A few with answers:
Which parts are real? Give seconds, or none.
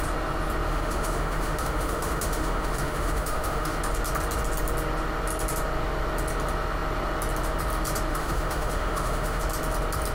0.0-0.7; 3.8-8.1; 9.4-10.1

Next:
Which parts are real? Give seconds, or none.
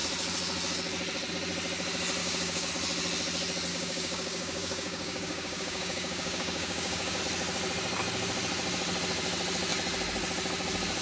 0.0-2.2; 2.7-3.7; 7.2-11.0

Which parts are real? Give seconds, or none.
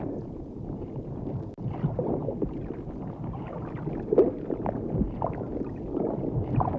0.0-6.8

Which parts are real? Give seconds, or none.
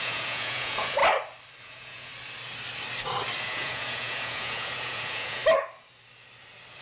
1.0-1.6; 2.1-3.4; 5.4-6.8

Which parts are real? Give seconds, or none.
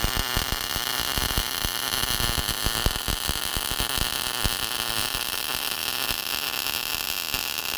2.8-4.9; 5.8-7.8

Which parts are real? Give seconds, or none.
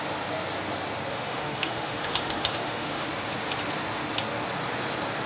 0.0-1.1; 3.1-5.3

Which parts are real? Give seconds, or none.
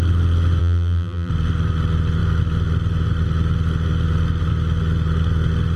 0.0-0.6; 1.3-5.8